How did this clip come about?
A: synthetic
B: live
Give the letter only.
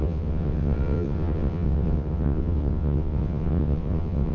A